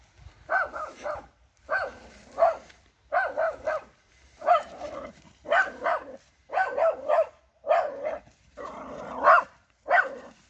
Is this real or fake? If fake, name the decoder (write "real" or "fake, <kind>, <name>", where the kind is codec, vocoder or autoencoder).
real